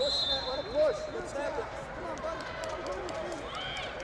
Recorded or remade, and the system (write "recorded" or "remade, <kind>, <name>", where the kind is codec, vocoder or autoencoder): remade, vocoder, BigVGAN v2